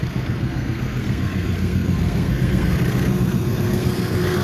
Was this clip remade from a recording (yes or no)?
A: yes